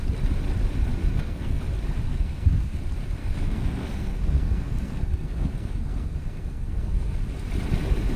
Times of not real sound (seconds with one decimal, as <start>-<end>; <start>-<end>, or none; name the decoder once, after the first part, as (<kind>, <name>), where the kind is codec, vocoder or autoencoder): 1.0-1.6 (codec, SNAC); 2.1-2.8; 3.2-7.2